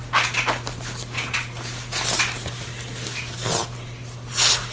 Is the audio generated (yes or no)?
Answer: no